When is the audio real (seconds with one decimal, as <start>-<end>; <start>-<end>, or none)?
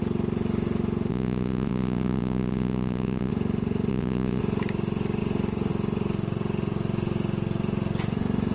0.0-1.1; 3.3-3.9; 4.4-8.5